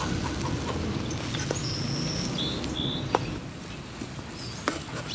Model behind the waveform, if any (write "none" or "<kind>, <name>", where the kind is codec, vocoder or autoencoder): none